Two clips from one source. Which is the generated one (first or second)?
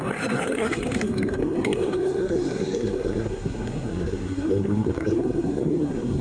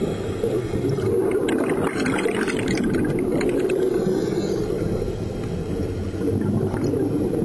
first